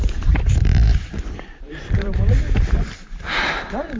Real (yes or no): no